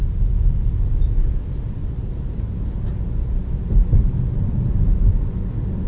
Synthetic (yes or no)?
no